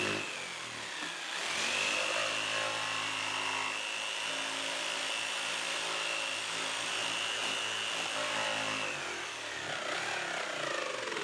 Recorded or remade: recorded